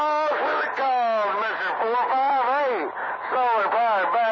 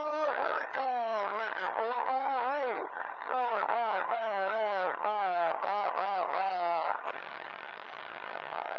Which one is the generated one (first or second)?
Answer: second